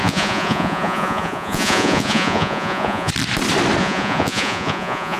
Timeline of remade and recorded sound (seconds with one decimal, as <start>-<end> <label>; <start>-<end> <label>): 0.0-3.1 remade; 3.1-3.8 recorded; 3.8-5.2 remade